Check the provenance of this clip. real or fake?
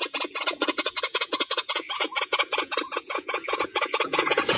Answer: fake